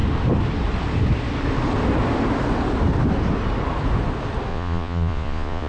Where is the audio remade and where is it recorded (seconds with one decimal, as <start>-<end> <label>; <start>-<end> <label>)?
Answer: 0.0-4.5 recorded; 4.5-5.7 remade